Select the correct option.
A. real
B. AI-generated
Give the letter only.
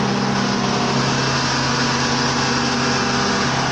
A